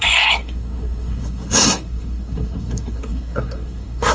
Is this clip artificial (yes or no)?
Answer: yes